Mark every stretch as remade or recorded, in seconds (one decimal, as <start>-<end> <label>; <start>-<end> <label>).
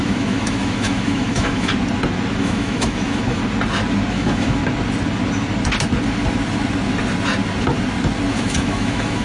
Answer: 0.0-1.7 remade; 1.7-2.4 recorded; 2.4-3.4 remade; 3.4-4.1 recorded; 4.1-4.6 remade; 4.6-8.3 recorded; 8.3-9.2 remade